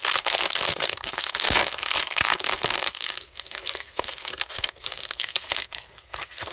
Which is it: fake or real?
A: fake